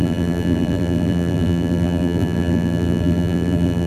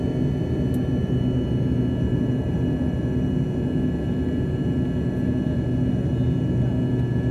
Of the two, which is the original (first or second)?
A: second